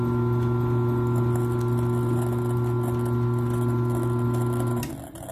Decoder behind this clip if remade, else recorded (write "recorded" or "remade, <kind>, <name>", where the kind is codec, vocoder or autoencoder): recorded